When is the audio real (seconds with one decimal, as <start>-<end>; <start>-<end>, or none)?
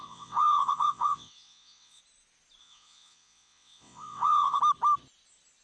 2.0-2.6; 4.6-5.6